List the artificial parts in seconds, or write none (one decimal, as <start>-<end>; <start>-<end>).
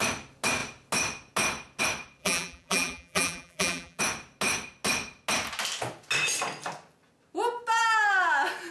2.2-4.0